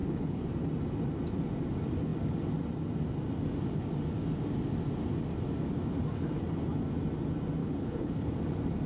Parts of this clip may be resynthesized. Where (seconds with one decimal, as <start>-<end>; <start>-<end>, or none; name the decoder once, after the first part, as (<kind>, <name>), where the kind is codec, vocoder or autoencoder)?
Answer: 0.0-0.5 (codec, HILCodec); 7.6-8.3